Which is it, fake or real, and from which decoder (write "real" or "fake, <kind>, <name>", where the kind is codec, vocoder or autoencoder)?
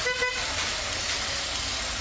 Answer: real